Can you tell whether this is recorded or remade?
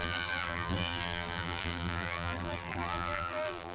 remade